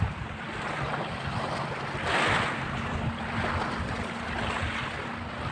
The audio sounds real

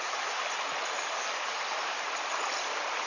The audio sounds real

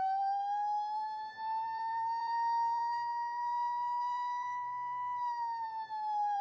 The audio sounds fake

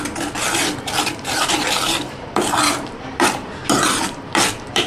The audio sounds fake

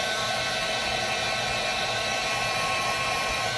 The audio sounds fake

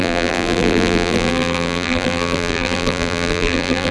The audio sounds fake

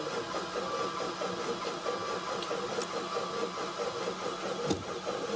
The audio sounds real